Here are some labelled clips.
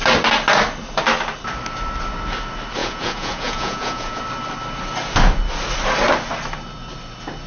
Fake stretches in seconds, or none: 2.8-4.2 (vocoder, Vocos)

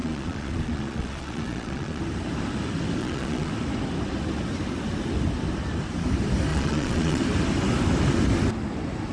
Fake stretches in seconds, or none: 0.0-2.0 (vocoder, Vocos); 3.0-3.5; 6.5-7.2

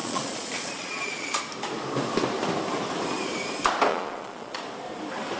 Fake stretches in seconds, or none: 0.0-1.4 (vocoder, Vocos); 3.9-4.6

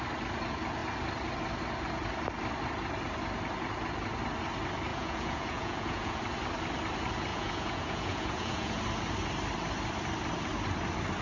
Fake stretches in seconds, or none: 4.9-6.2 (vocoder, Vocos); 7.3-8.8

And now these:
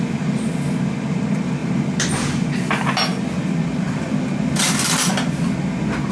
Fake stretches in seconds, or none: none